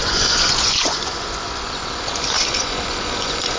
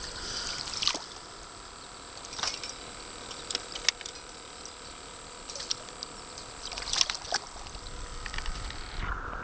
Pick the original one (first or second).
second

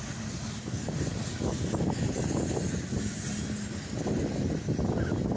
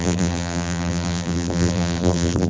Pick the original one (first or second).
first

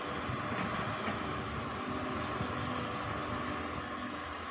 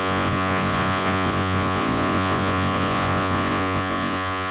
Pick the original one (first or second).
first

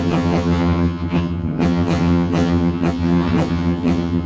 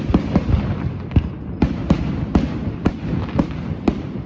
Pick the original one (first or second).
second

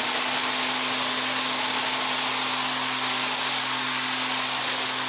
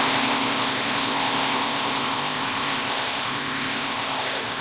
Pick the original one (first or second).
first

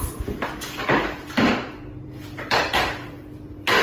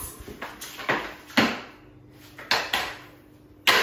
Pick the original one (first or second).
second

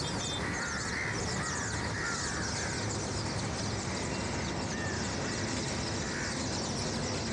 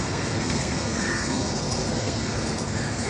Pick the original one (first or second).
first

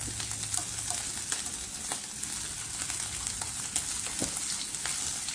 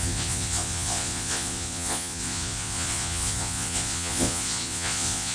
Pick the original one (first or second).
first